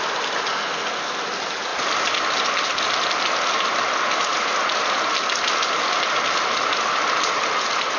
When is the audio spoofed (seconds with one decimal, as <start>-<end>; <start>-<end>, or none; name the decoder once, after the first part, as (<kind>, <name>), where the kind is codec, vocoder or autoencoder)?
0.5-1.2 (codec, SNAC)